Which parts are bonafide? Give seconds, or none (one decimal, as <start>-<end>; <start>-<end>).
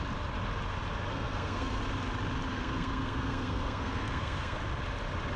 0.0-1.1; 1.8-2.5; 4.6-5.4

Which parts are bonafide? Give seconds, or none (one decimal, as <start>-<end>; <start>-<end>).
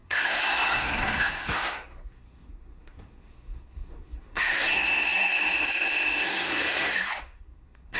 none